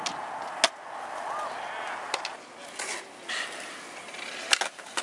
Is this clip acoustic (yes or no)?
yes